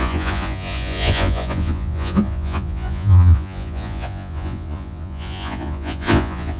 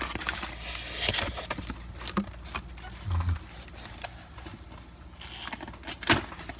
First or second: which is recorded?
second